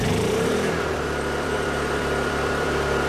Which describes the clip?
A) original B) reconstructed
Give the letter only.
B